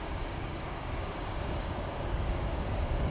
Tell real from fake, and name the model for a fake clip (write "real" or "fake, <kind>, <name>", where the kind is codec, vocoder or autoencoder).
fake, codec, DAC